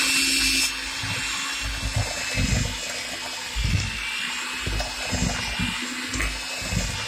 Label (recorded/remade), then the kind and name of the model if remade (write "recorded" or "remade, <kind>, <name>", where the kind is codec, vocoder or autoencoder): recorded